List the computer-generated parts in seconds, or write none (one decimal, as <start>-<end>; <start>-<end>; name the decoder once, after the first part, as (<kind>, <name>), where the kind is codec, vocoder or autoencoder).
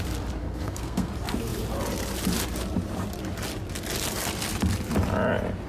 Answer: 0.4-1.1 (codec, SNAC)